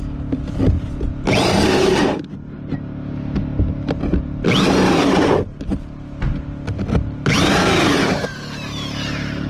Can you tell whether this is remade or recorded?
recorded